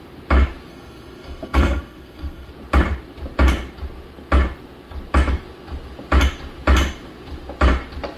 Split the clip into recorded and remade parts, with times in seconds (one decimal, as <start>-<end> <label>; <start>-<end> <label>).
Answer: 0.0-0.7 recorded; 0.7-2.5 remade; 2.5-8.2 recorded